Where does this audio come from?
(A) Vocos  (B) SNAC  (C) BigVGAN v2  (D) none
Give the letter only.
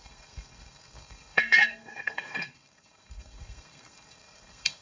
B